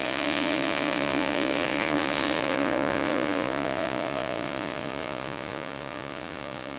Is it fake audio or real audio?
fake